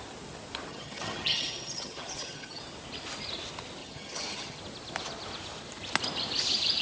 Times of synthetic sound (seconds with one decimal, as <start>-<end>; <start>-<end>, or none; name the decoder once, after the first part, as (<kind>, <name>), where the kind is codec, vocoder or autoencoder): 0.7-2.6 (vocoder, HiFi-GAN); 3.8-4.6